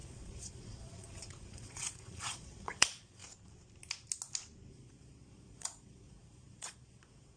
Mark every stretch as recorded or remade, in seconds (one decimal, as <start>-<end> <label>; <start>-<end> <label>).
0.0-3.2 remade; 3.2-4.7 recorded; 4.7-7.4 remade